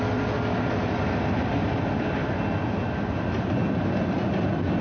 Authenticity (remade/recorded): recorded